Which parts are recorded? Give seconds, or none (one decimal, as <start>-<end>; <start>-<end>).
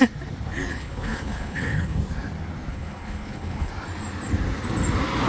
0.0-0.7; 2.0-2.7; 3.7-5.3